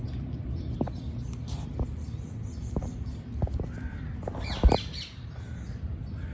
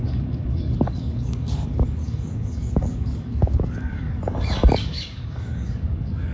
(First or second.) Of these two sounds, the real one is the first